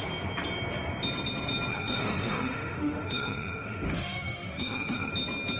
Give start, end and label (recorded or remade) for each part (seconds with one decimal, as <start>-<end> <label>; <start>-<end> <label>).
0.0-1.7 recorded; 1.7-5.1 remade; 5.1-5.6 recorded